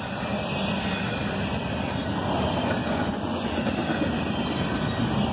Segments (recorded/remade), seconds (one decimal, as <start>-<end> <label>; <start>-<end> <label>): 0.0-2.8 recorded; 2.8-3.6 remade; 3.6-5.3 recorded